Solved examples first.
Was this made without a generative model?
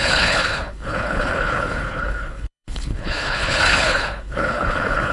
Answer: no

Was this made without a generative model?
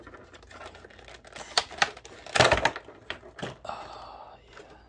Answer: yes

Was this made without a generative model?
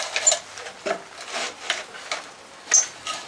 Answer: yes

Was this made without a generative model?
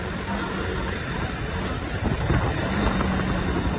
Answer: yes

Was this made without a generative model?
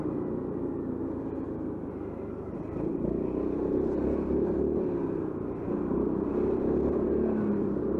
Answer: yes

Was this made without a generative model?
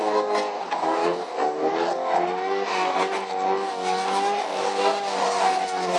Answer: no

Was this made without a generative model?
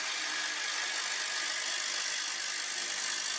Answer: yes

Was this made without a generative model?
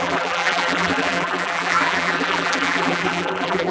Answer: no